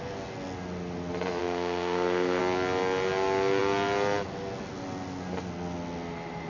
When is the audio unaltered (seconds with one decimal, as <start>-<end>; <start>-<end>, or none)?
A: 0.0-1.4; 2.4-6.5